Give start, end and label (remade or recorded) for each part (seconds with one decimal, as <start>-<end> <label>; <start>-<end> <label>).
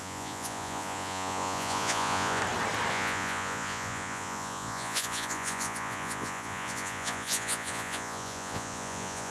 0.0-2.4 remade; 2.4-2.9 recorded; 2.9-9.3 remade